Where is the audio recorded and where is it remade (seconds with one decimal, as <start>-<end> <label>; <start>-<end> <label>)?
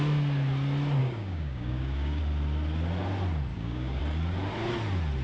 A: 0.0-1.0 recorded; 1.0-2.2 remade; 2.2-3.5 recorded; 3.5-4.0 remade; 4.0-5.2 recorded